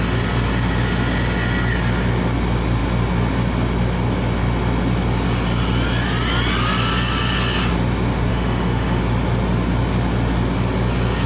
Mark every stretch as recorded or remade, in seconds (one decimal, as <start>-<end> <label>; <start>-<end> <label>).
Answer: 0.0-8.3 recorded; 8.3-9.0 remade; 9.0-11.3 recorded